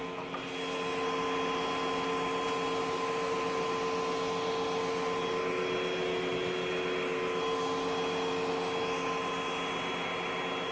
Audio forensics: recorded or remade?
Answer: recorded